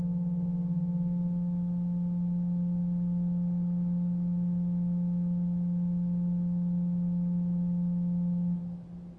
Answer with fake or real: real